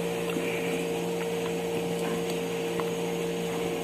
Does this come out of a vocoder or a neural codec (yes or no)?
yes